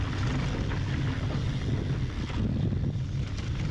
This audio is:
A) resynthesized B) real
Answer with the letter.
B